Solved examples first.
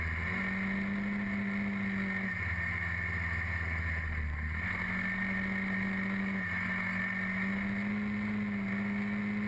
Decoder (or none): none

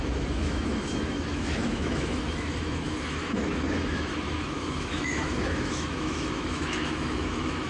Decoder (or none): autoencoder, DAC-VAE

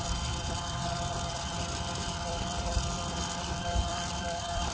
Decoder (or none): vocoder, BigVGAN v2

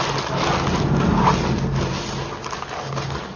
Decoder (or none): none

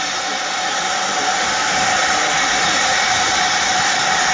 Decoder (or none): none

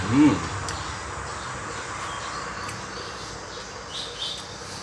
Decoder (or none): none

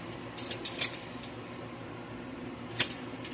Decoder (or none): none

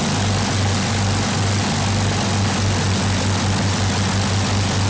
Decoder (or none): none